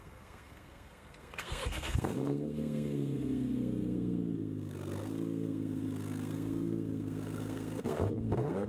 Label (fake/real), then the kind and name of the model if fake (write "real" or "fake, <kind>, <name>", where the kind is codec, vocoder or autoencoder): fake, codec, SNAC